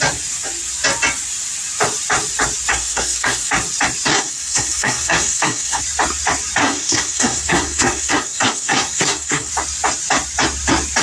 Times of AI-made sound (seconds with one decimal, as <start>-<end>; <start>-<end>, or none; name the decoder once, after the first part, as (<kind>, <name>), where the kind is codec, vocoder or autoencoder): 2.7-3.5 (codec, SNAC); 4.1-5.8; 6.6-9.5